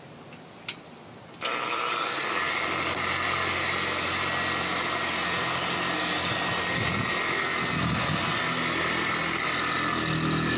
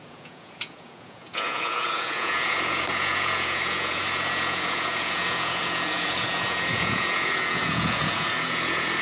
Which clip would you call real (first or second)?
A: first